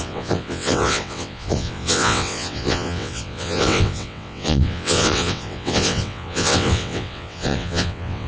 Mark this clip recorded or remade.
remade